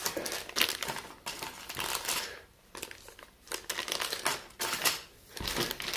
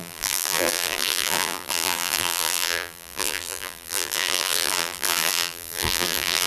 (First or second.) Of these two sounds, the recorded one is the first